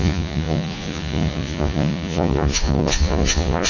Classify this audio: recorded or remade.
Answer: remade